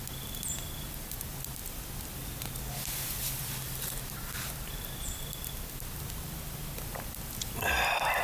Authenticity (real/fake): fake